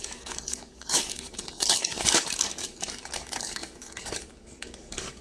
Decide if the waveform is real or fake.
fake